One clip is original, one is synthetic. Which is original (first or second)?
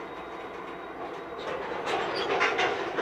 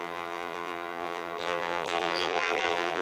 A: first